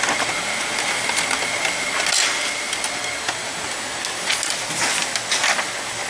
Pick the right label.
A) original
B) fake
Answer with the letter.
A